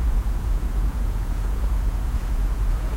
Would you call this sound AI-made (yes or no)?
yes